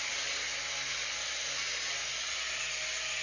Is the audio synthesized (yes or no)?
no